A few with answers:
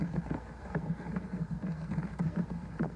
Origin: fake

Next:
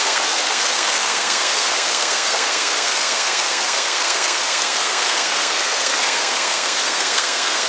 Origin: fake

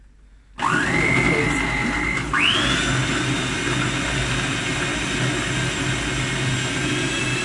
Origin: real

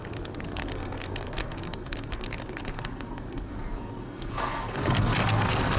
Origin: fake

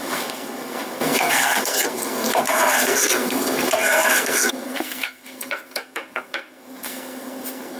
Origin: fake